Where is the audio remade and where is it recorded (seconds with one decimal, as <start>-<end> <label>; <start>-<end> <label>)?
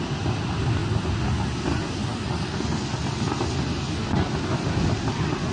0.0-5.5 recorded